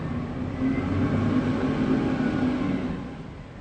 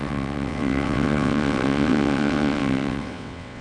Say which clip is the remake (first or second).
second